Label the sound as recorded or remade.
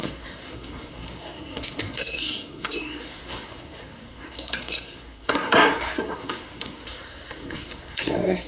remade